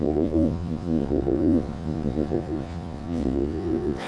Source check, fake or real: fake